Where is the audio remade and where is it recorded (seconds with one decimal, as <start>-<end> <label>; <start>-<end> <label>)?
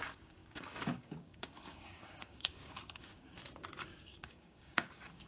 0.0-3.4 remade; 3.4-4.0 recorded; 4.0-5.3 remade